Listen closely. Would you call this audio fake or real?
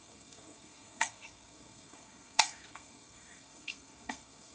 fake